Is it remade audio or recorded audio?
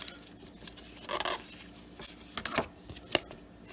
recorded